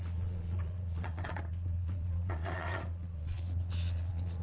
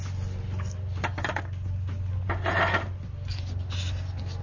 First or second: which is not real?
first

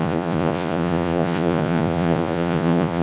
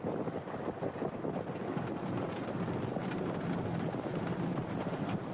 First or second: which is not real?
first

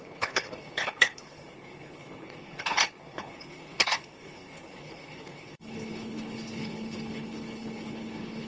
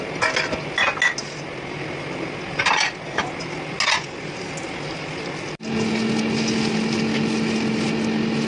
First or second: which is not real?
first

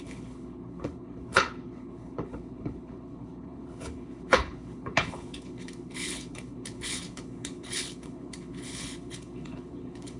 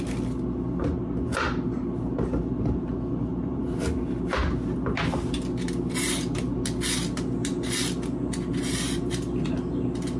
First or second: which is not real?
first